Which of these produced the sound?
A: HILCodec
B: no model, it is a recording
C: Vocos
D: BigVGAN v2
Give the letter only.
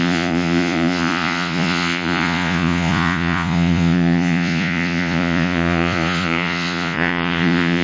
C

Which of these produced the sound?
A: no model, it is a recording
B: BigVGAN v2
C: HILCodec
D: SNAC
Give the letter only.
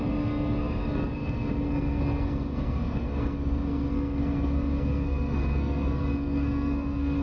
D